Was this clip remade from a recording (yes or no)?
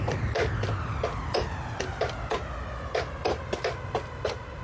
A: yes